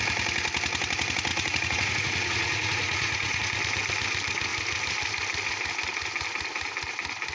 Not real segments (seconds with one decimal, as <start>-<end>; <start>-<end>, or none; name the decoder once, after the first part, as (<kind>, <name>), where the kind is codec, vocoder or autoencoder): 1.3-3.4 (vocoder, Vocos)